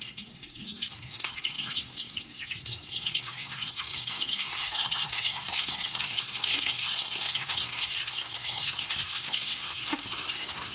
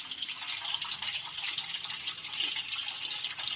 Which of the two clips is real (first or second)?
second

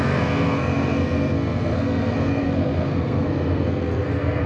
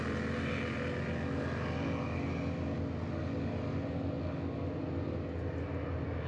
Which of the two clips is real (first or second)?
second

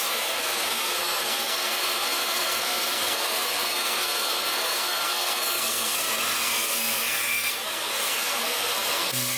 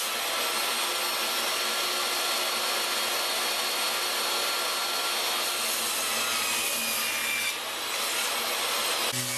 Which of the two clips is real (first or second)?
second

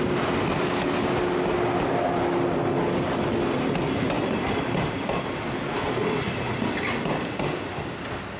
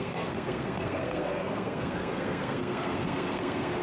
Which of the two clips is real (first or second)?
first